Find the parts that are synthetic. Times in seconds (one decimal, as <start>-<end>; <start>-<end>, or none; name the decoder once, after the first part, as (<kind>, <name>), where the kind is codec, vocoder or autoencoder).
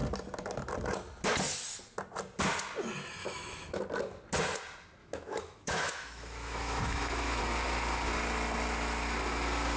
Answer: 3.2-3.8 (autoencoder, DAC-VAE); 5.0-7.4